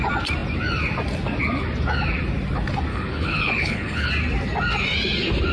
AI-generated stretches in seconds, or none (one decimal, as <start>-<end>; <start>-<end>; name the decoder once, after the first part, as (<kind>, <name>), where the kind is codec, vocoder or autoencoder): 2.9-4.1 (codec, HILCodec)